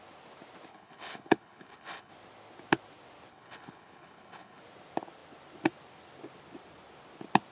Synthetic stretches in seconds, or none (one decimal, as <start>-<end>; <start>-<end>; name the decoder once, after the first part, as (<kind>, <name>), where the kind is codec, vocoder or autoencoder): 0.7-2.1 (codec, HILCodec); 3.3-4.6